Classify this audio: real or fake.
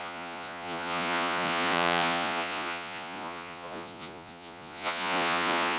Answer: fake